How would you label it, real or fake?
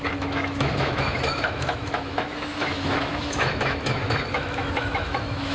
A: fake